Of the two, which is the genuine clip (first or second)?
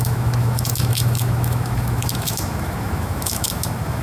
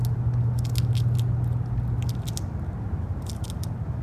second